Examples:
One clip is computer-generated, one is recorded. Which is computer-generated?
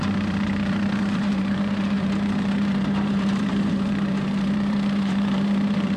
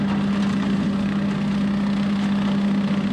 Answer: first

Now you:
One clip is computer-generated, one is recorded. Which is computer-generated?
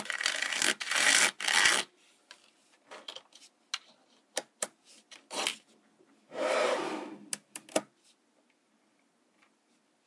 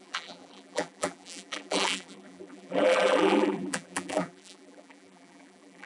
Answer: second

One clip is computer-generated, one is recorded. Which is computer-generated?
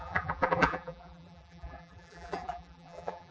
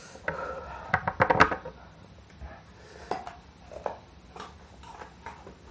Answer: first